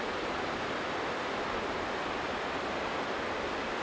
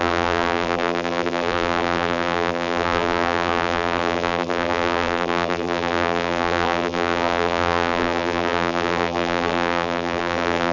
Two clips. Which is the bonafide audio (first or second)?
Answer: first